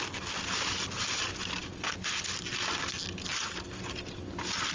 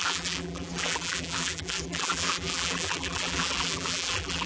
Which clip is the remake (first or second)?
second